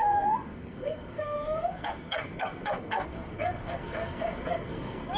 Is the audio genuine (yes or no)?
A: no